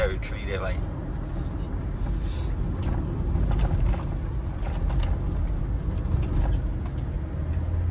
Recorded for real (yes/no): yes